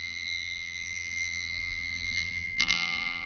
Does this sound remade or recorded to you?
remade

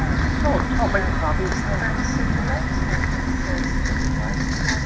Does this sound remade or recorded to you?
recorded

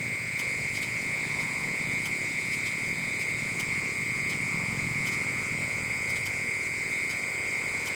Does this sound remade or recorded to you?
remade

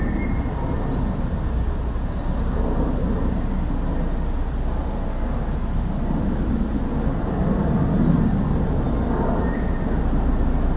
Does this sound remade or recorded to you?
recorded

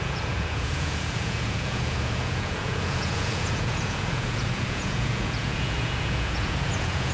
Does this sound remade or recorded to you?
remade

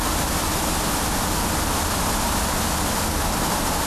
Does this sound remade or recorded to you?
recorded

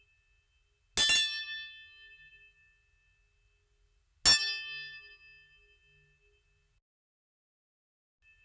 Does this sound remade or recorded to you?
recorded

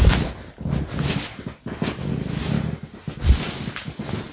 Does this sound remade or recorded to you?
recorded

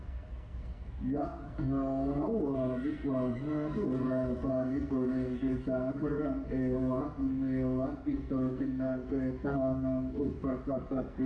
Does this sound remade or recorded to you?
remade